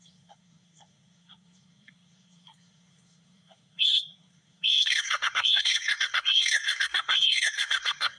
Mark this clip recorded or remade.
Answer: remade